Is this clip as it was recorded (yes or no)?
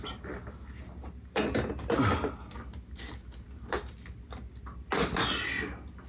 yes